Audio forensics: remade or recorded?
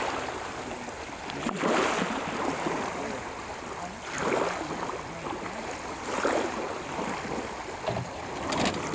recorded